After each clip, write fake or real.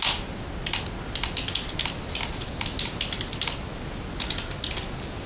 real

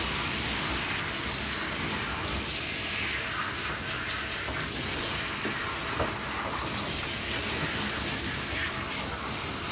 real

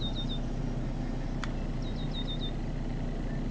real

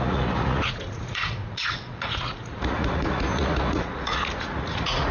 fake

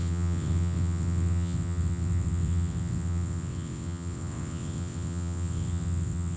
fake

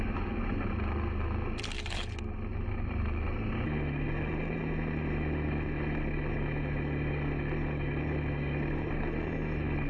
real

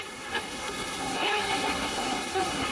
fake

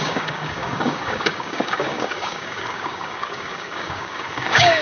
fake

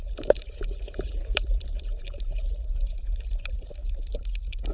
fake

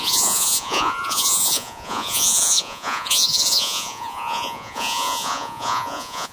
fake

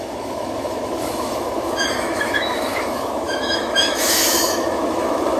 fake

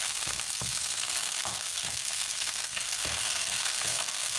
fake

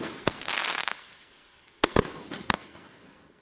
fake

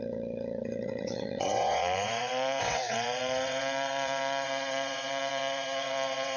fake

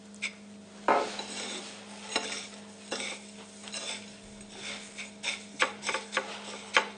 real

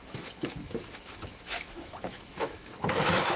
fake